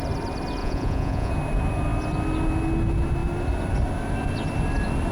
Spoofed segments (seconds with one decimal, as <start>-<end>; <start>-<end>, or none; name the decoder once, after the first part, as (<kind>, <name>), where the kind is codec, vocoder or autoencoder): 0.6-1.3 (vocoder, Vocos)